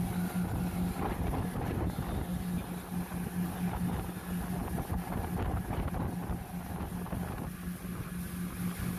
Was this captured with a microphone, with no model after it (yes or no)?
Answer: yes